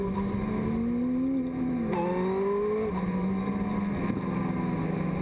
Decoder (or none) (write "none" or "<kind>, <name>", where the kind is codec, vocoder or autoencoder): none